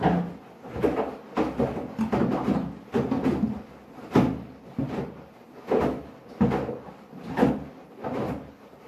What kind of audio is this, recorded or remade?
recorded